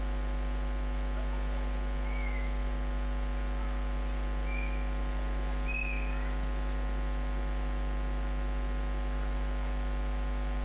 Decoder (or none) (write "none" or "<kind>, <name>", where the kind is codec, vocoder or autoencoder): none